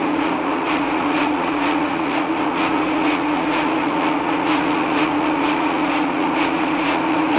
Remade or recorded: remade